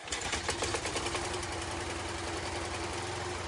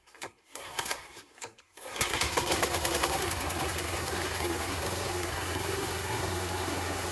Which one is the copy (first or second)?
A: second